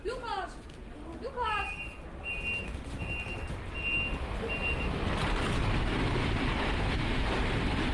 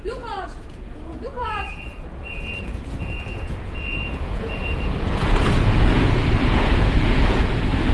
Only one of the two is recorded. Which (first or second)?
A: first